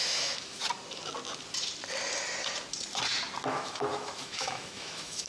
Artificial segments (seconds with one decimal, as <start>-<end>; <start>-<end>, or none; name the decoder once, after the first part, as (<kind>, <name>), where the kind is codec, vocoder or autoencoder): 0.0-0.6 (autoencoder, DAC-VAE); 3.5-5.3